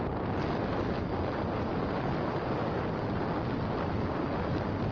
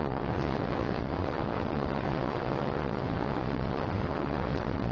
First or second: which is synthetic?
second